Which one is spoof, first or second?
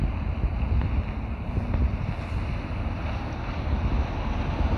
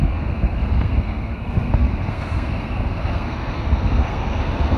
second